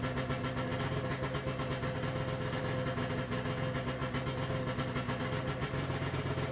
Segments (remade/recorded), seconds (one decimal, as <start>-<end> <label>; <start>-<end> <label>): 0.0-6.5 recorded